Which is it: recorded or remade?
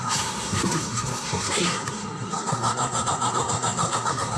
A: remade